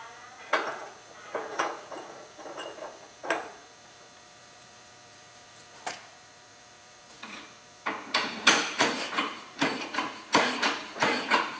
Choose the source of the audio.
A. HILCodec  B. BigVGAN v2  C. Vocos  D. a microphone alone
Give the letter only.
C